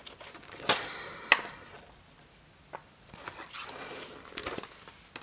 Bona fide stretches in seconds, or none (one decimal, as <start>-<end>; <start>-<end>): 0.0-5.2